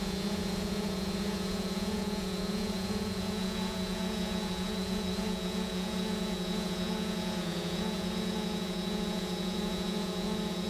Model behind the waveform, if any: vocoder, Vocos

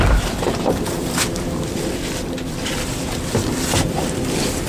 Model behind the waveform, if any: vocoder, BigVGAN v2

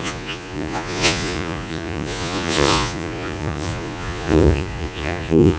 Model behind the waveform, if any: vocoder, Vocos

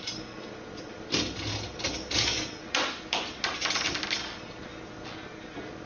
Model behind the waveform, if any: none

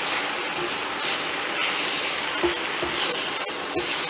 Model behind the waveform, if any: none